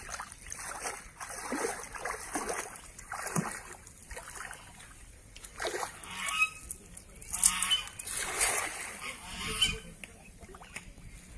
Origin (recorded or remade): recorded